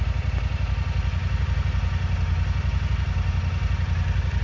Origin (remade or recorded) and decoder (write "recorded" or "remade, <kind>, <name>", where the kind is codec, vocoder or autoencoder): recorded